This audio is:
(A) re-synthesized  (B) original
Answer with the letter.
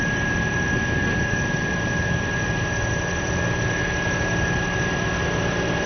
B